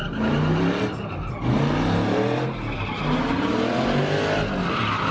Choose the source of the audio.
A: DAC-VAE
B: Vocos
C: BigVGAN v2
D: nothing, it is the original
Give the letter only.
D